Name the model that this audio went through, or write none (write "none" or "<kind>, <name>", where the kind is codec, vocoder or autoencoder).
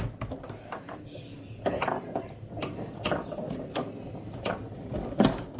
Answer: none